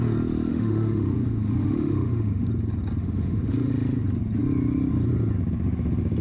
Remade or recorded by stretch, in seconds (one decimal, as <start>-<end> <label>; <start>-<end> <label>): 0.0-0.5 recorded; 0.5-2.5 remade; 2.5-3.0 recorded; 3.0-3.7 remade; 3.7-6.2 recorded